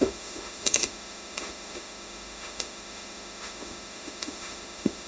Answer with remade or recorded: remade